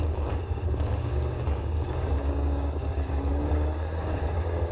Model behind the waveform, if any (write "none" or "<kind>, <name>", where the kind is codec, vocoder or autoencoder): codec, DAC